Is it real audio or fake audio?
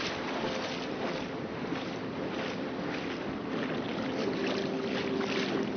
real